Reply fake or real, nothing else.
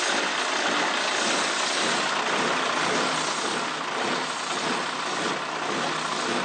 real